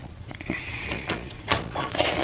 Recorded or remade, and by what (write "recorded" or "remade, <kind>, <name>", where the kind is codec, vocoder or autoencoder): remade, vocoder, Vocos